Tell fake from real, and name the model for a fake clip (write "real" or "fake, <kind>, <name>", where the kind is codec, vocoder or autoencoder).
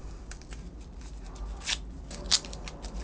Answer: real